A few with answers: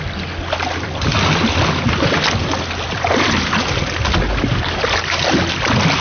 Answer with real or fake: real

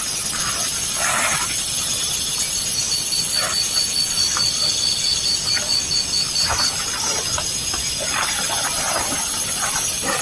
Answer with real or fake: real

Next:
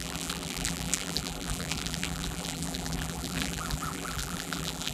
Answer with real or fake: fake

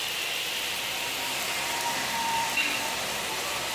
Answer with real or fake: fake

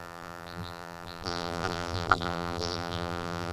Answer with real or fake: fake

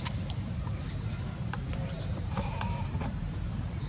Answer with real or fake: fake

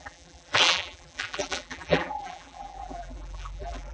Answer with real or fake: fake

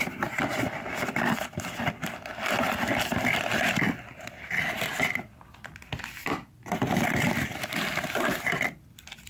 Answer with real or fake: fake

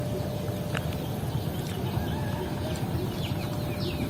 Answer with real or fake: real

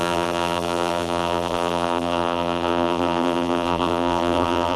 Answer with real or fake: fake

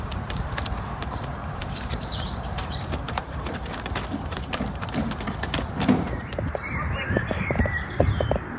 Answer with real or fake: fake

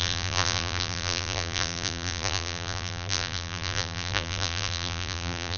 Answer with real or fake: fake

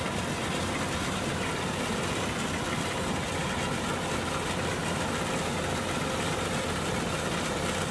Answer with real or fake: real